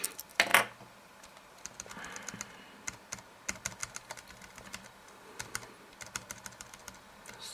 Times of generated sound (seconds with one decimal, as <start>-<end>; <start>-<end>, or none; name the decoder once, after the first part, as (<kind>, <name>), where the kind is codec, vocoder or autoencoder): none